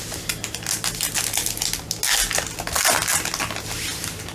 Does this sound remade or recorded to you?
recorded